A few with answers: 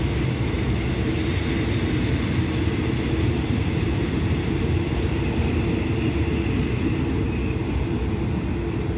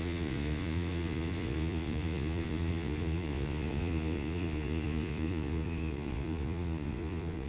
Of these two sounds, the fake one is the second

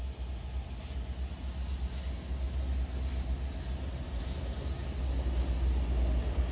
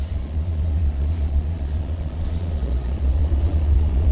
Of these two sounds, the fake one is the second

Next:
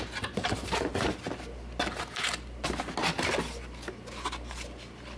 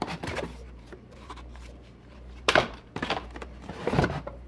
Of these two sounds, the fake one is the second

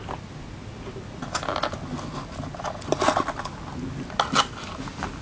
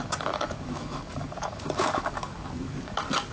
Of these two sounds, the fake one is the second